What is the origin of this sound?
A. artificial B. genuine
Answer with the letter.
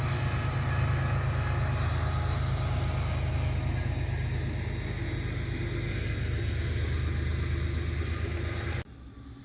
B